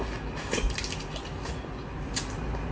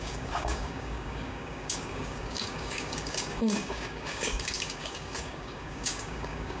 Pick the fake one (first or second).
second